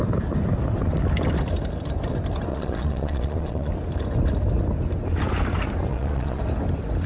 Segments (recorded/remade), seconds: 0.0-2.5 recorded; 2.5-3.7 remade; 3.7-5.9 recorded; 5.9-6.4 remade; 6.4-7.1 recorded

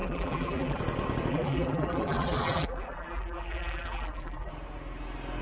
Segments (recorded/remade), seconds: 0.0-0.8 remade; 0.8-1.3 recorded; 1.3-4.5 remade; 4.5-5.4 recorded

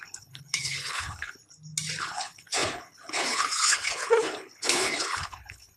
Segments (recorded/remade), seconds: 0.0-1.4 remade; 1.4-2.0 recorded; 2.0-5.8 remade

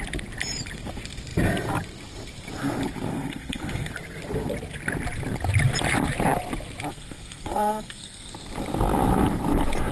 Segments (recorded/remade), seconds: 0.0-3.1 recorded; 3.1-3.9 remade; 3.9-6.9 recorded; 6.9-8.3 remade; 8.3-9.9 recorded

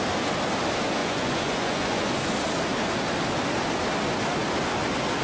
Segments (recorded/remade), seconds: 0.0-1.0 recorded; 1.0-2.2 remade; 2.2-5.2 recorded

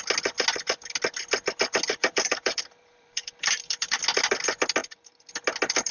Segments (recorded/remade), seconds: 0.0-2.0 recorded; 2.0-4.0 remade; 4.0-4.8 recorded; 4.8-5.3 remade; 5.3-5.9 recorded

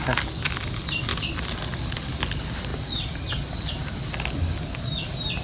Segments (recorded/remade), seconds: 0.0-1.1 recorded; 1.1-1.7 remade; 1.7-2.7 recorded; 2.7-3.9 remade; 3.9-5.4 recorded